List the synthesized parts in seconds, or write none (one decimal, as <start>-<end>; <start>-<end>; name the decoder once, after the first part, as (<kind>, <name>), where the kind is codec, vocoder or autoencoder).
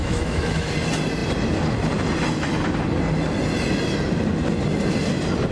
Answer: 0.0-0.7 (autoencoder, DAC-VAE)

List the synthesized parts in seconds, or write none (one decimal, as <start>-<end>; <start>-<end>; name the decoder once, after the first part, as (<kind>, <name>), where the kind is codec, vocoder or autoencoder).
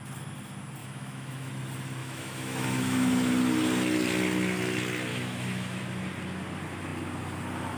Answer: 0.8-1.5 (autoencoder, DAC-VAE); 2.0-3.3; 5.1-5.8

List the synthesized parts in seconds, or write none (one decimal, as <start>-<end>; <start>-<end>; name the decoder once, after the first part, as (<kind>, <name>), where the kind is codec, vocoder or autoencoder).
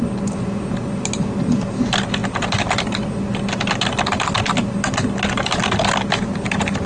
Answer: none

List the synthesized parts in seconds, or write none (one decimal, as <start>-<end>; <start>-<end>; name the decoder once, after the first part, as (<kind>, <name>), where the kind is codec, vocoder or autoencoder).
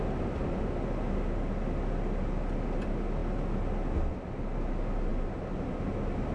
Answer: none